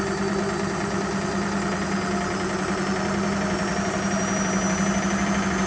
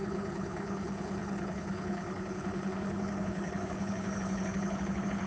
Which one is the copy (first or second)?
second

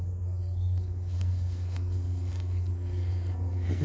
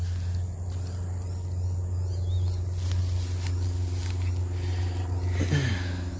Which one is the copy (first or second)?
first